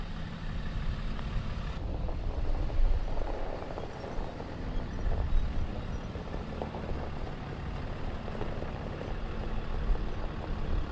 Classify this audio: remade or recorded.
recorded